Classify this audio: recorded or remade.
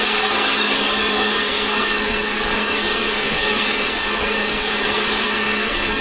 remade